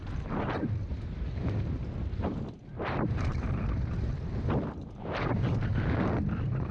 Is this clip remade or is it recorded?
recorded